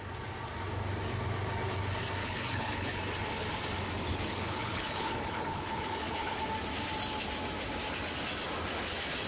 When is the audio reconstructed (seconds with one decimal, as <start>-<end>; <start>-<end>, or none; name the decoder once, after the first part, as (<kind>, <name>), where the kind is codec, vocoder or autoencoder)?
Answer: 2.2-3.0 (codec, HILCodec); 4.1-6.4